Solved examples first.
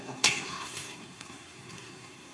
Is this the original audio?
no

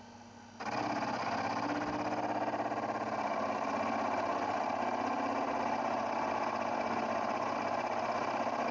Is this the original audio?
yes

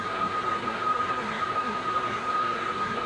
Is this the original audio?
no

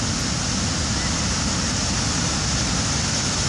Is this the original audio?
yes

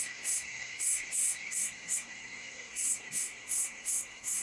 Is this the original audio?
no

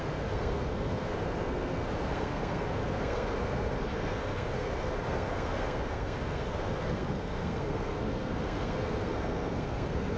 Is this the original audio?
no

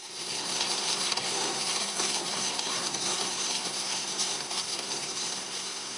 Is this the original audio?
no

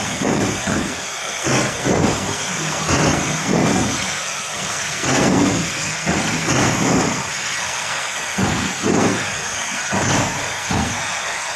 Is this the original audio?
no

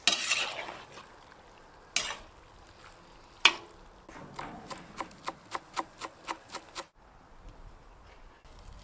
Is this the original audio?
yes